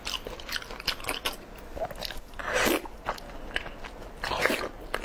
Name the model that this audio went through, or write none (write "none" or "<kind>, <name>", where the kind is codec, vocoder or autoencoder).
none